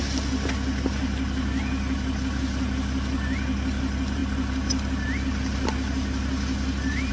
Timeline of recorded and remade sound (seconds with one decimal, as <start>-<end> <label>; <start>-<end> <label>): 0.0-7.1 recorded